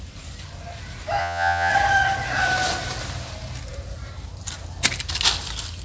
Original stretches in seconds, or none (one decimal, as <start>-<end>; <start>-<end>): 0.0-1.2; 1.7-5.8